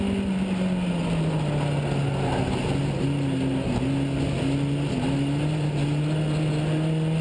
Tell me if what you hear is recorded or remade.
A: recorded